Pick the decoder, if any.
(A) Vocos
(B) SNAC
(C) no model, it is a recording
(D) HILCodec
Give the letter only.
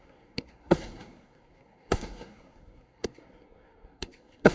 B